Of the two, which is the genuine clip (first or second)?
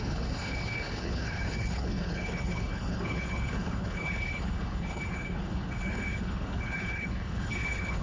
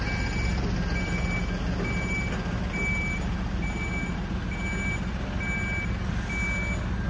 second